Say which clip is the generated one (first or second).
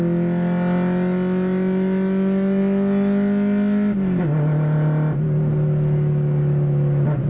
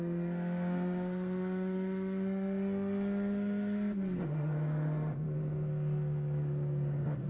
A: second